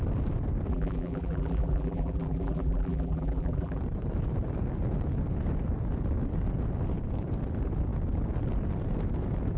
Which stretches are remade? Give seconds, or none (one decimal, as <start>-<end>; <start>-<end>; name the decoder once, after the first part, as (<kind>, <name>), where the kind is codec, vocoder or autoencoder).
0.7-3.8 (vocoder, BigVGAN v2)